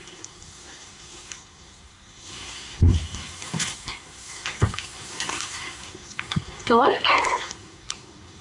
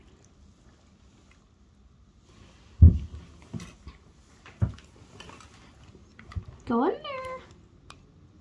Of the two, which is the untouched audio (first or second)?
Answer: second